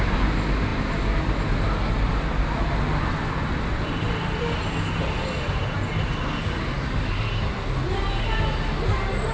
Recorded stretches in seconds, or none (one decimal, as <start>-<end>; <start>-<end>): 0.0-6.4; 7.3-9.3